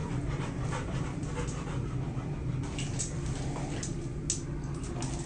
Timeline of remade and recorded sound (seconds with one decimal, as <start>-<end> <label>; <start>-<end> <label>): 0.0-3.0 remade; 3.0-5.3 recorded